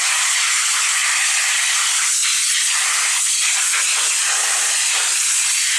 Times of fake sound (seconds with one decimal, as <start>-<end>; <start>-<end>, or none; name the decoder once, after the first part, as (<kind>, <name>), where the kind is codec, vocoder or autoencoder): none